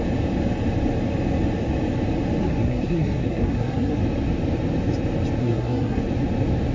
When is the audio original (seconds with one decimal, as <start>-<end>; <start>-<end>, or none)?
0.0-2.4; 4.0-5.4; 6.0-6.7

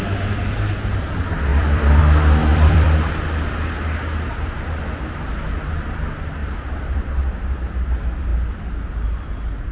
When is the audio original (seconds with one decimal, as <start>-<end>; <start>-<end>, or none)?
0.0-1.5; 2.0-2.5; 3.1-6.4; 7.2-9.7